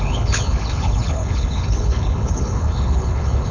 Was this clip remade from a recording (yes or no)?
yes